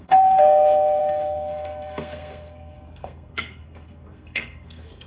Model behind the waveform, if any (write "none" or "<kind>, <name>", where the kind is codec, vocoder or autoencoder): codec, SNAC